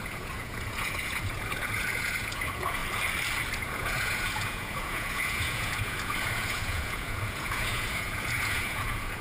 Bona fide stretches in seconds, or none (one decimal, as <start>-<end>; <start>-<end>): 2.8-3.6